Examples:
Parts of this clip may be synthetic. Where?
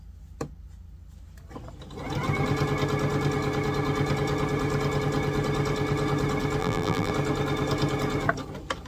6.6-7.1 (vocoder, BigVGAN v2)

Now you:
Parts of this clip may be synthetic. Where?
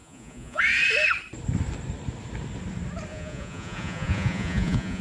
0.0-0.6 (vocoder, Vocos); 3.1-5.0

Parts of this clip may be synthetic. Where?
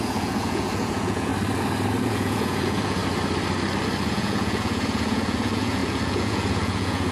0.0-1.3 (vocoder, Vocos); 2.0-3.0; 4.1-7.1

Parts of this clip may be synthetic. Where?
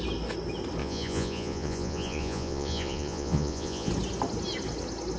0.8-3.9 (vocoder, Vocos)